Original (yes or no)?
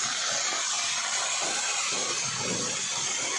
yes